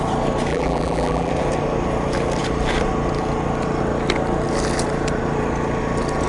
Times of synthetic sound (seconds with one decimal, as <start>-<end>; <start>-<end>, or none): 0.5-1.3